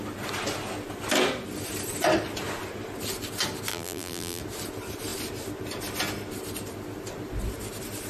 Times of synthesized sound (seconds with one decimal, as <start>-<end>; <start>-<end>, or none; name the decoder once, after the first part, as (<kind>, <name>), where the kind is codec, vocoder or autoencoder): 3.7-4.4 (vocoder, BigVGAN v2)